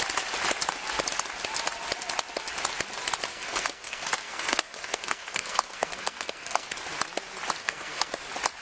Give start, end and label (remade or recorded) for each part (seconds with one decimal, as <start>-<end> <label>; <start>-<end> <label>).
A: 0.0-3.3 recorded; 3.3-6.7 remade; 6.7-7.6 recorded; 7.6-8.1 remade; 8.1-8.6 recorded